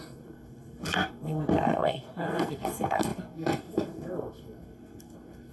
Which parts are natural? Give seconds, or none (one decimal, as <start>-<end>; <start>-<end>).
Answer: none